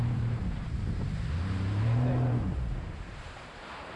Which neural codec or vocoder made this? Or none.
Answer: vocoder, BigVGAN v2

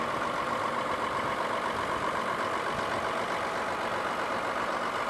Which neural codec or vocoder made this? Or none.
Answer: none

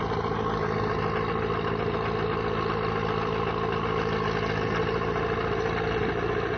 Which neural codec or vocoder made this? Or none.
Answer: none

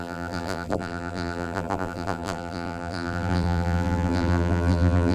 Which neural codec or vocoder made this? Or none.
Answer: vocoder, BigVGAN v2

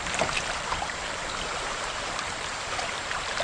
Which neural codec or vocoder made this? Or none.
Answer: vocoder, BigVGAN v2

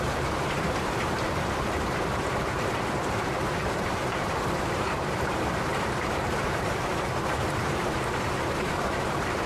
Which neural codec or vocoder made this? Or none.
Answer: vocoder, BigVGAN v2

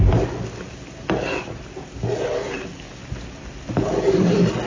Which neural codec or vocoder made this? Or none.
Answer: none